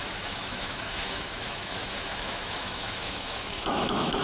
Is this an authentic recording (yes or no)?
no